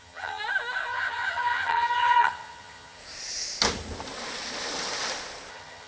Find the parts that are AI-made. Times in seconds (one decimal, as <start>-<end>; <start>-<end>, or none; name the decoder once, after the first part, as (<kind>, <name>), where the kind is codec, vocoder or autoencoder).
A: 0.0-0.4 (vocoder, HiFi-GAN); 0.9-3.0; 5.5-5.9